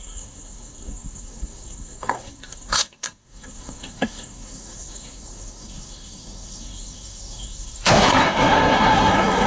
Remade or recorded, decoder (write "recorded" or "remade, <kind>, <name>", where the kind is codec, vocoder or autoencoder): remade, codec, SNAC